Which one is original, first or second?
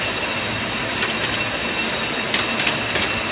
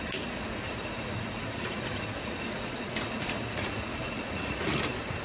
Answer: first